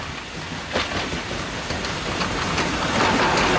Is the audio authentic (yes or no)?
yes